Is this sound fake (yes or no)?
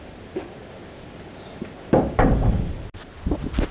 no